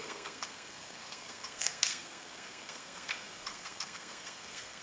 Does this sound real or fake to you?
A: fake